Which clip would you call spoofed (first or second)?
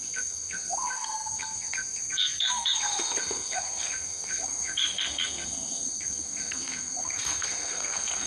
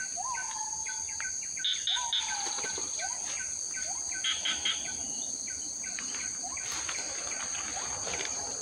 first